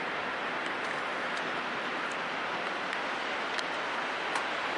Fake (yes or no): no